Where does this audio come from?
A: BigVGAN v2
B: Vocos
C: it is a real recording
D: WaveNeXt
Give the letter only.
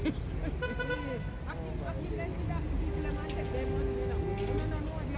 C